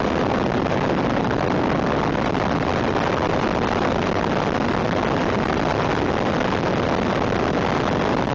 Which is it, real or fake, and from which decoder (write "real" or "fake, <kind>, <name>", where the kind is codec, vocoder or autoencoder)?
real